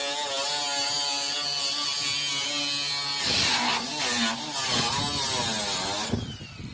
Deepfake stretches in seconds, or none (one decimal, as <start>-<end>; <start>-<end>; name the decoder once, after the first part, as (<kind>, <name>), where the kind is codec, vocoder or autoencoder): none

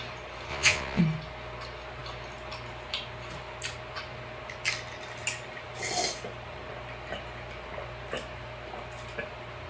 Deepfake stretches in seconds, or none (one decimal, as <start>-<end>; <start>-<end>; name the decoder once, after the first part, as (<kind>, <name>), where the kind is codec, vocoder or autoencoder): 0.5-1.0 (vocoder, Vocos)